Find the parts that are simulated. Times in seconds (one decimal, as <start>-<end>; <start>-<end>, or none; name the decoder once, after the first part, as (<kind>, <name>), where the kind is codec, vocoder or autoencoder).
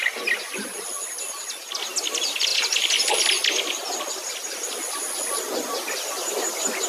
none